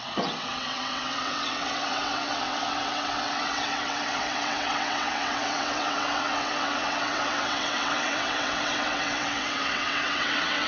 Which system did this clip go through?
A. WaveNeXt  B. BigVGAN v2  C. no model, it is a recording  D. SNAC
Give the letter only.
A